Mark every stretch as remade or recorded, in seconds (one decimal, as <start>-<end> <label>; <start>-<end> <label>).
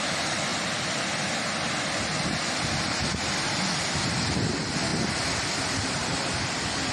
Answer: 0.0-4.9 recorded; 4.9-6.4 remade; 6.4-6.9 recorded